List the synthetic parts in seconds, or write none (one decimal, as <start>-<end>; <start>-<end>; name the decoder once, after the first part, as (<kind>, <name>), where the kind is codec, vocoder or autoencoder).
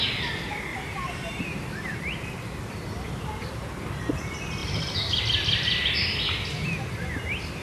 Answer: 0.7-1.4 (vocoder, BigVGAN v2); 1.9-4.0; 4.6-5.2